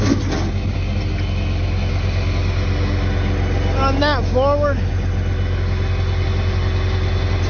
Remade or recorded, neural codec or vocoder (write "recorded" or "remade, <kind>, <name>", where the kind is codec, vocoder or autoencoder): recorded